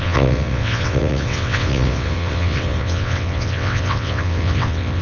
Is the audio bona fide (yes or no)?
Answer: no